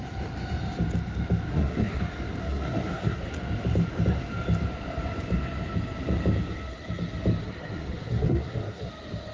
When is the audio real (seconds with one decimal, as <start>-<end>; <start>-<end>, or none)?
0.0-1.5; 2.0-2.4; 3.3-7.4; 8.9-9.3